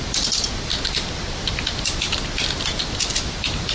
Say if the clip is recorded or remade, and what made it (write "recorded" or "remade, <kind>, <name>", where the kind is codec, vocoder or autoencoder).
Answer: recorded